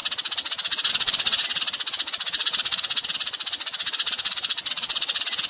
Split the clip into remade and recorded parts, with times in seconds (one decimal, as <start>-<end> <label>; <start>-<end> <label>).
0.0-0.9 recorded; 0.9-5.5 remade